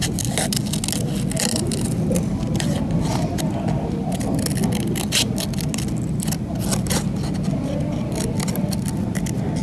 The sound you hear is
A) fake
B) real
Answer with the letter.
B